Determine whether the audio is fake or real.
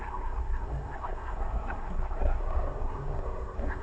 fake